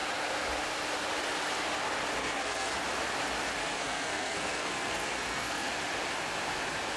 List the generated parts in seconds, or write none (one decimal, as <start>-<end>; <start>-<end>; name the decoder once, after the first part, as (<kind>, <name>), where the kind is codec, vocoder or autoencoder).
2.2-2.8 (codec, SNAC); 3.6-5.7